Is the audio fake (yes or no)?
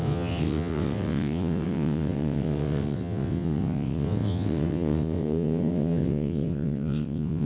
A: yes